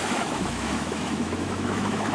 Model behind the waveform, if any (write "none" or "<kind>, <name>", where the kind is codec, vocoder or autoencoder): autoencoder, DAC-VAE